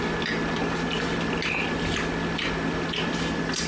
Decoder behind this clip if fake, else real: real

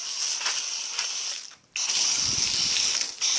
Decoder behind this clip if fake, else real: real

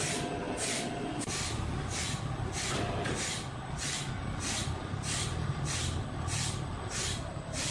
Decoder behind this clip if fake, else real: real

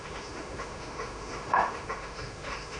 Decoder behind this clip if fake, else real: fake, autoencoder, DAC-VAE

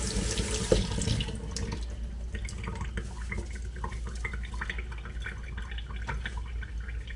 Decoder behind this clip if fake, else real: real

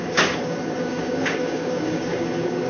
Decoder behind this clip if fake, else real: fake, codec, DAC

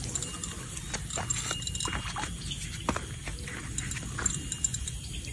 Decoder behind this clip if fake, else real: real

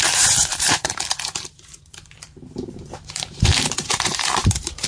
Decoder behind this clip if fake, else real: fake, vocoder, BigVGAN v2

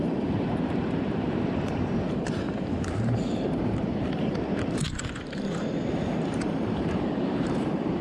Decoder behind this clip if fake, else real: fake, vocoder, BigVGAN v2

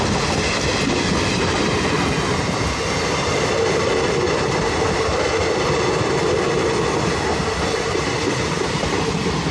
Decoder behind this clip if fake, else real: real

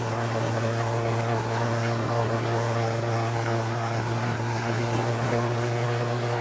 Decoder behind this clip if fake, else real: fake, codec, SNAC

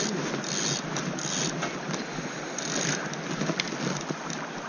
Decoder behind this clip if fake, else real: real